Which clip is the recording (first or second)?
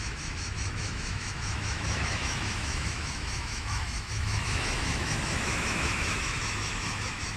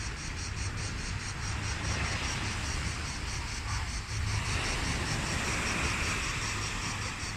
second